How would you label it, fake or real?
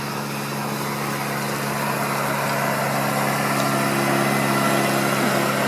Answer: real